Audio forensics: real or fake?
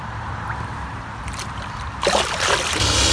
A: real